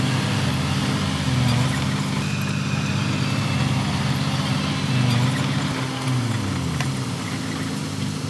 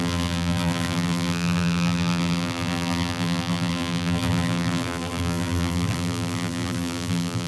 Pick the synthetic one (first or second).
second